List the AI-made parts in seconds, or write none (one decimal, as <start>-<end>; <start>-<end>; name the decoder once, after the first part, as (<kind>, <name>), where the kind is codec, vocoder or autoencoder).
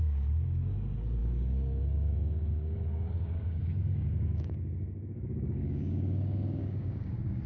0.0-7.5 (codec, DAC)